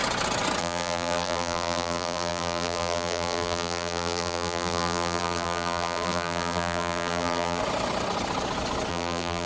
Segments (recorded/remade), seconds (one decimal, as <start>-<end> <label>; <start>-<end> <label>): 0.0-0.6 recorded; 0.6-7.6 remade; 7.6-8.9 recorded; 8.9-9.4 remade